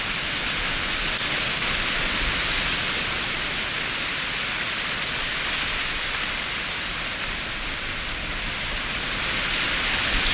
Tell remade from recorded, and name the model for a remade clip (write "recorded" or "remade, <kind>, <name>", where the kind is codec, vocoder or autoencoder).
recorded